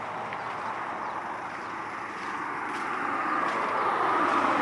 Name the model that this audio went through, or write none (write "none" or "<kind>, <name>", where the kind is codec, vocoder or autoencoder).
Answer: none